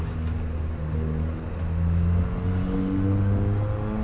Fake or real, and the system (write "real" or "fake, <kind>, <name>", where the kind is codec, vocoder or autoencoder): real